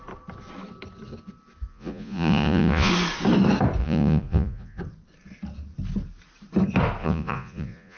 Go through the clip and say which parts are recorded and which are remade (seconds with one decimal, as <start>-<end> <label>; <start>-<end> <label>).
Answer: 0.0-1.7 recorded; 1.7-2.9 remade; 2.9-3.8 recorded; 3.8-4.8 remade; 4.8-7.0 recorded; 7.0-8.0 remade